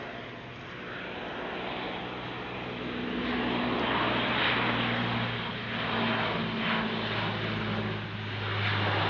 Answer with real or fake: real